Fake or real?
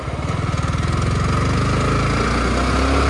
real